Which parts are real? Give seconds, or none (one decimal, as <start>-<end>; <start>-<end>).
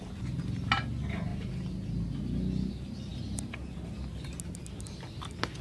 0.0-5.6